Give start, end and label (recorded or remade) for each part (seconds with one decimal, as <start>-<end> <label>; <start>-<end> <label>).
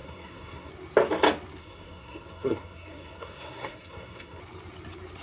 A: 0.0-0.7 remade; 0.7-1.6 recorded; 1.6-4.4 remade; 4.4-5.2 recorded